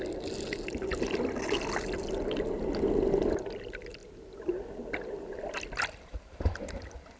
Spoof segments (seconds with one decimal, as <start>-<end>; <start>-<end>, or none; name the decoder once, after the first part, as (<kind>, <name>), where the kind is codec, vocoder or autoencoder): none